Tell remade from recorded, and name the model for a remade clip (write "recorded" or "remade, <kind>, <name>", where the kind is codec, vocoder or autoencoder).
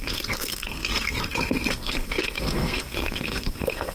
remade, codec, SNAC